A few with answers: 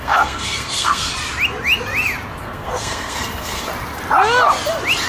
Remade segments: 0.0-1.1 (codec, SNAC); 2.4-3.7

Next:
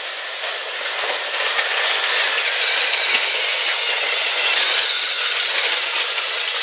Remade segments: 0.0-6.6 (vocoder, Vocos)

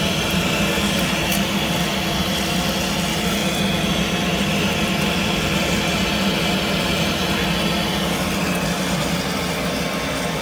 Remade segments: none

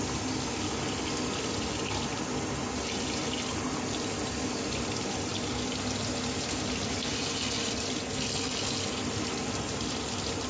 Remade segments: none

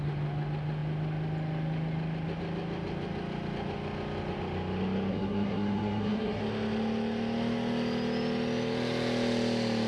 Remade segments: 5.1-6.4 (codec, SNAC)

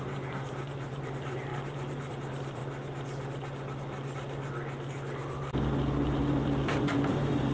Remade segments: 0.0-2.6 (vocoder, BigVGAN v2); 7.1-7.5